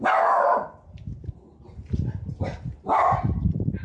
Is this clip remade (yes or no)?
no